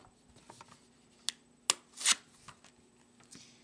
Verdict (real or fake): real